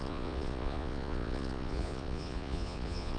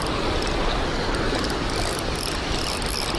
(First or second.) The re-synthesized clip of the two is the first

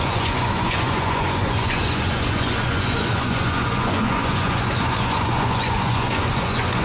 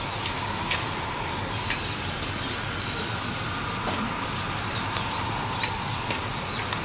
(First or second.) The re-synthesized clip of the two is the first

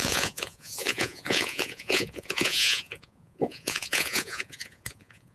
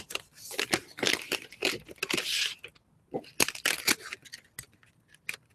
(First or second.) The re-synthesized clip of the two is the first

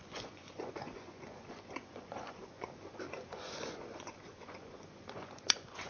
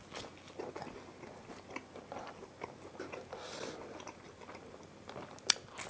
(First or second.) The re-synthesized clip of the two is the first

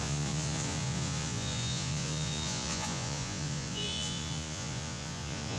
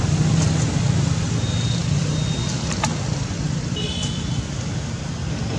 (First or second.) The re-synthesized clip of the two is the first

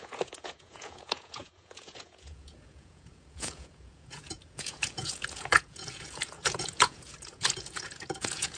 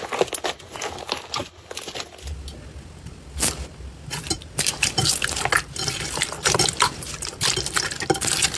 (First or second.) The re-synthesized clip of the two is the first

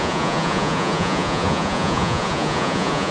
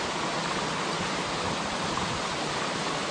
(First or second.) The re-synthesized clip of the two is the first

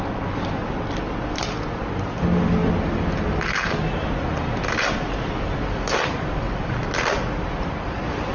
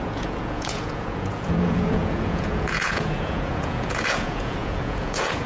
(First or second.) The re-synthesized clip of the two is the second